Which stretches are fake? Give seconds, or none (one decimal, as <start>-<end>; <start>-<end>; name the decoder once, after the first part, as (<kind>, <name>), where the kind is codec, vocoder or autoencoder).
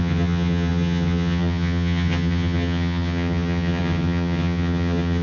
0.0-5.2 (vocoder, HiFi-GAN)